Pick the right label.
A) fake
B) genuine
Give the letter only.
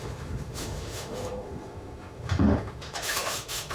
A